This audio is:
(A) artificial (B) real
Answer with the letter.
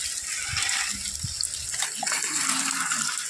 B